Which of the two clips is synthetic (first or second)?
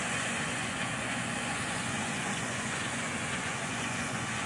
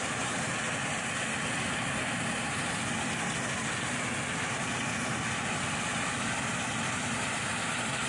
first